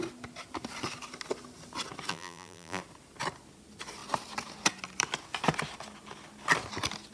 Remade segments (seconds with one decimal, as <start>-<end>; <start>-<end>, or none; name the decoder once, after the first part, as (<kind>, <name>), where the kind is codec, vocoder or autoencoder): 2.1-2.8 (vocoder, BigVGAN v2)